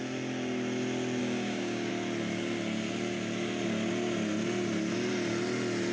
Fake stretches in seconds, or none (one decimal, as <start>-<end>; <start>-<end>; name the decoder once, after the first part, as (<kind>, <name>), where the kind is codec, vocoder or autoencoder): 1.2-1.9 (codec, DAC)